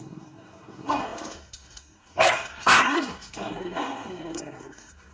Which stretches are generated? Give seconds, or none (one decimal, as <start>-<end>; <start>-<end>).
0.0-5.1